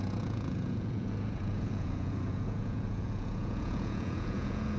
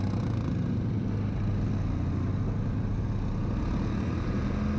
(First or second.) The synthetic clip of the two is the first